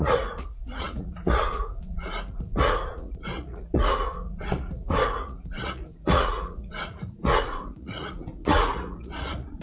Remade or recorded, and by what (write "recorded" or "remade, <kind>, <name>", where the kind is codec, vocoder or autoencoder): remade, vocoder, Vocos